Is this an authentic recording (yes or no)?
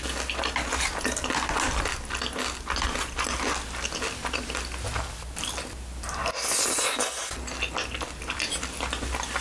yes